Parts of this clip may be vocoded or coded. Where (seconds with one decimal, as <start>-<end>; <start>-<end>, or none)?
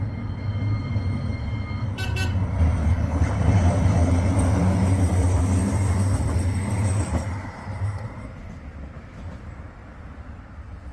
2.8-4.3